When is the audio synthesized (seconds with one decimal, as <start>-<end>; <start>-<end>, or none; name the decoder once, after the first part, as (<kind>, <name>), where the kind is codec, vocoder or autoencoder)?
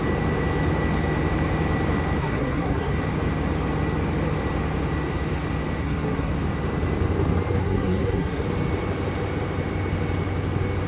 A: 2.2-3.0 (codec, SNAC); 5.8-6.3; 7.6-8.4